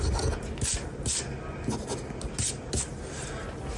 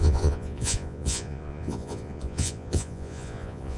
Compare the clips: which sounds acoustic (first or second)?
first